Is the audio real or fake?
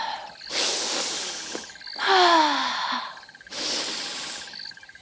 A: real